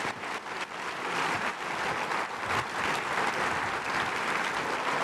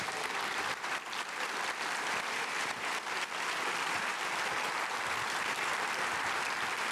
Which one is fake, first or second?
second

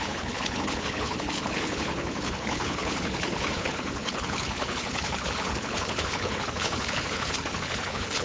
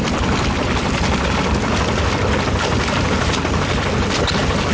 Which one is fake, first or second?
first